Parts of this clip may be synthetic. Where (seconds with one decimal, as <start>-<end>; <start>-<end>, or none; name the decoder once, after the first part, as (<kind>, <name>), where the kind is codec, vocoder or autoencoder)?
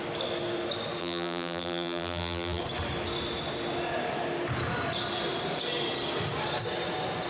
1.0-2.6 (vocoder, BigVGAN v2)